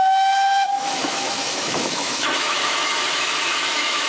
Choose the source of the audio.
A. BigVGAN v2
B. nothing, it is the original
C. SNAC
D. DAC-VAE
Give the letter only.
D